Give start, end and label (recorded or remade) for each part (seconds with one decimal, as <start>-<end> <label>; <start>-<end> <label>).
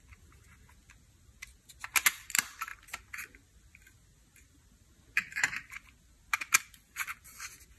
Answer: 0.0-7.8 recorded